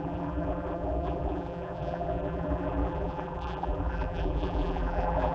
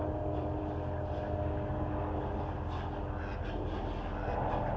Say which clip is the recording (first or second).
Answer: second